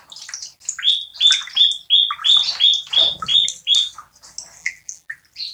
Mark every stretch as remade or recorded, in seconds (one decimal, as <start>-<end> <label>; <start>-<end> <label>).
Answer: 0.0-4.6 recorded; 4.6-5.1 remade; 5.1-5.5 recorded